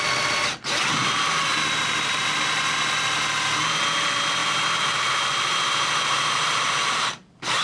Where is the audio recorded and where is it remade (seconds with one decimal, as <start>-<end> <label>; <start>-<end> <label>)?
0.0-4.4 recorded; 4.4-6.7 remade; 6.7-7.6 recorded